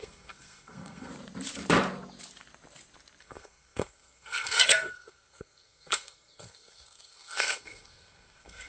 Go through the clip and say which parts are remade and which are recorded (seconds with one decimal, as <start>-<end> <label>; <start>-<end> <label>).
0.0-1.1 remade; 1.1-3.2 recorded; 3.2-8.7 remade